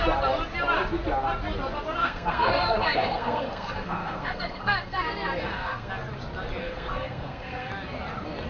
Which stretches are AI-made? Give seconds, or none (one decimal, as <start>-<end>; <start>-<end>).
2.0-5.9; 6.6-7.7